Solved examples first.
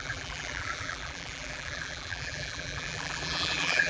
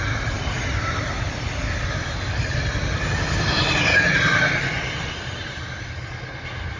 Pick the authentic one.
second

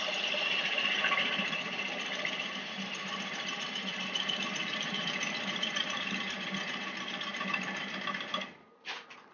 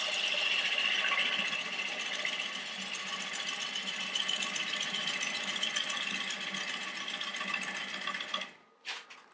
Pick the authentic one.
second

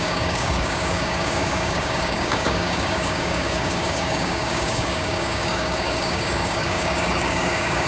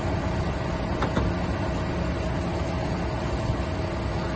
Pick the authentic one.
second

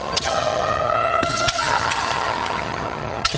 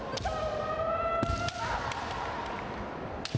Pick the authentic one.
second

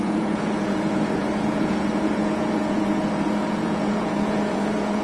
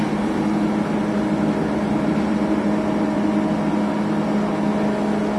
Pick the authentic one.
second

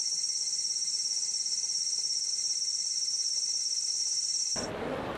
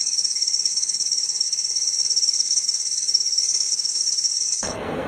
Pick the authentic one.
first